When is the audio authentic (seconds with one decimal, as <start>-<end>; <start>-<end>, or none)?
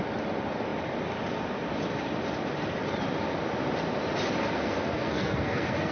0.0-4.4